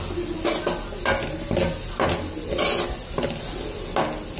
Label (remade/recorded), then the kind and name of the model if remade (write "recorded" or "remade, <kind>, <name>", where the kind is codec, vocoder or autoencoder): recorded